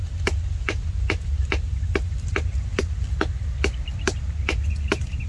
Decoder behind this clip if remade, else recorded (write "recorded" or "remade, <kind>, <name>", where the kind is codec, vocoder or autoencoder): remade, vocoder, BigVGAN v2